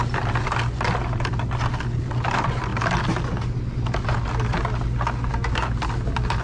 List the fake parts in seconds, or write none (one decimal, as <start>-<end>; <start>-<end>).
none